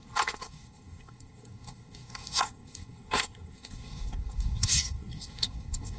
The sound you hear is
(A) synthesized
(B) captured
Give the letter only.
A